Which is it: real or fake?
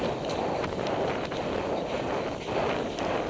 real